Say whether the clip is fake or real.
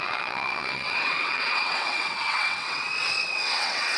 fake